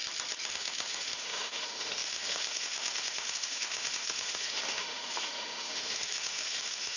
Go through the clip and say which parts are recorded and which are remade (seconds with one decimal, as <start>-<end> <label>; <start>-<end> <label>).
0.0-0.5 recorded; 0.5-7.0 remade

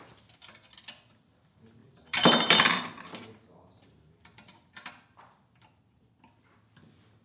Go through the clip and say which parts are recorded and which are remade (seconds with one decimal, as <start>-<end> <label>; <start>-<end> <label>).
0.0-1.8 recorded; 1.8-6.1 remade; 6.1-7.2 recorded

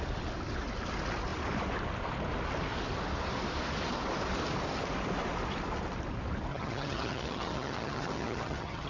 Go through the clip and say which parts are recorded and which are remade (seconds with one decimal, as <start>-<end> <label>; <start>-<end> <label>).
0.0-6.5 recorded; 6.5-8.9 remade

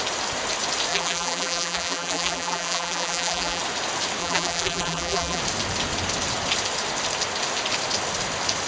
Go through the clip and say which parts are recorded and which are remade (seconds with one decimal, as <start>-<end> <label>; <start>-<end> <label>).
0.0-0.9 recorded; 0.9-3.6 remade; 3.6-4.2 recorded; 4.2-5.4 remade; 5.4-8.7 recorded